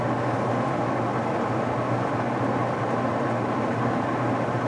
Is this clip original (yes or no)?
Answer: yes